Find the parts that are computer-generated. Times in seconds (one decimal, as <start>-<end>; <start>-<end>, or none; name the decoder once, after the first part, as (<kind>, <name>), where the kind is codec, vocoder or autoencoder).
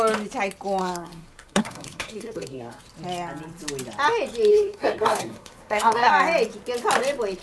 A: 0.8-2.8 (codec, SNAC); 4.5-6.1